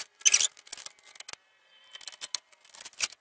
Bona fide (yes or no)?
yes